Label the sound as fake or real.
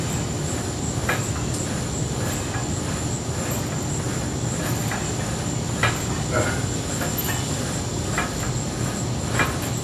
real